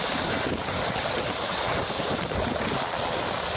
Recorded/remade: recorded